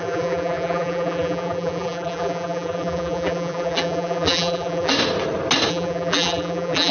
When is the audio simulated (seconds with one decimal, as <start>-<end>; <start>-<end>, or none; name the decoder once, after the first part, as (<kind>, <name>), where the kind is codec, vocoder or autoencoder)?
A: 0.0-4.9 (vocoder, BigVGAN v2); 5.7-6.9